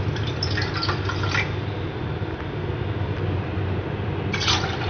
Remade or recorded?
recorded